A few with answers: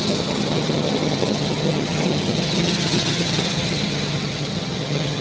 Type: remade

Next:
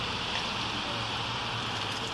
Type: recorded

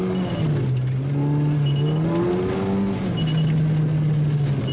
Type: recorded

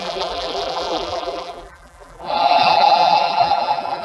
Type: remade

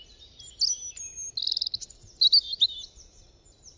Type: recorded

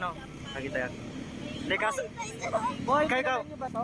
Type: recorded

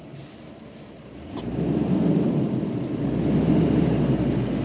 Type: recorded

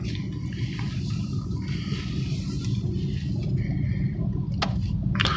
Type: recorded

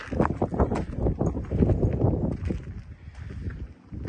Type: recorded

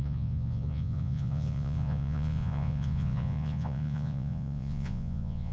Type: remade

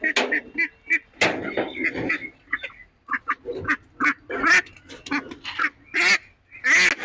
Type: recorded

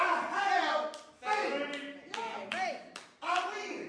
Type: recorded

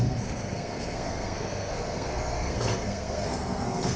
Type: remade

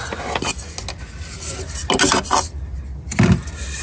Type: recorded